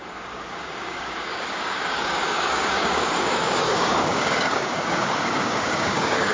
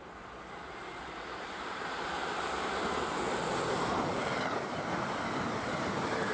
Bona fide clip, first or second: second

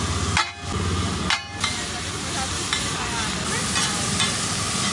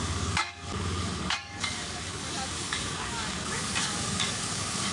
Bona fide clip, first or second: first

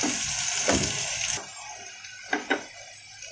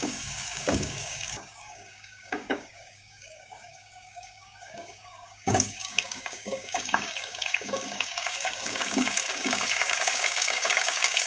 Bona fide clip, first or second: first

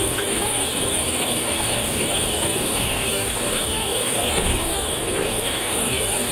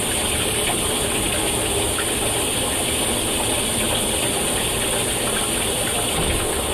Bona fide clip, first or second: second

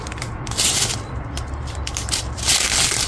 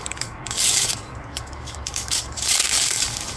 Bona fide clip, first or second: first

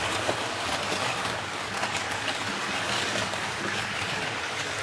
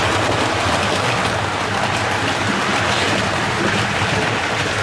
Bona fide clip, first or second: second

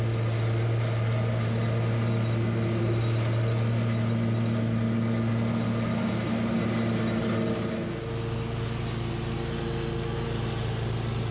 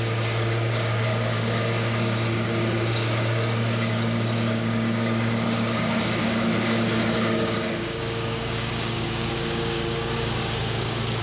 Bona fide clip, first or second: first